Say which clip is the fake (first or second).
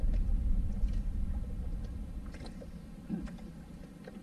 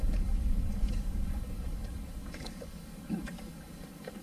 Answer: second